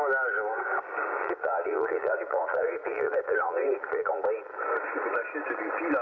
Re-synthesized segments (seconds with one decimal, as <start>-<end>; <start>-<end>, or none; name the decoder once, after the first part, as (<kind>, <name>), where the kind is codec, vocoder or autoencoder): 1.2-4.1 (vocoder, Vocos)